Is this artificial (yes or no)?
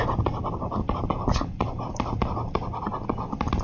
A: no